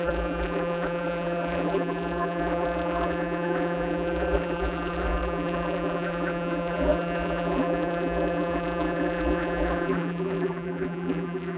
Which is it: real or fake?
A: fake